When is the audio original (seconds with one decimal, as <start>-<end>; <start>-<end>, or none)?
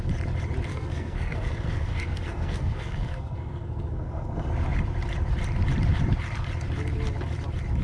0.0-0.7; 4.5-7.8